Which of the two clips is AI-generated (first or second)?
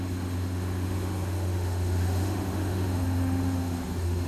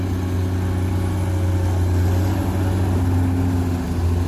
first